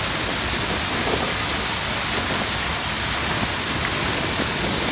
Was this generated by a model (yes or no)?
no